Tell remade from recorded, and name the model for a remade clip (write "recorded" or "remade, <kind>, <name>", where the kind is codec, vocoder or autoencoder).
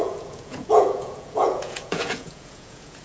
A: remade, vocoder, Vocos